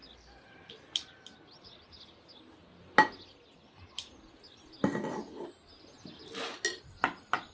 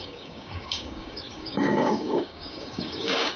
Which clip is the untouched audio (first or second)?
first